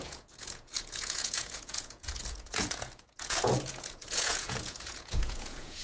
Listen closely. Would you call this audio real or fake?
fake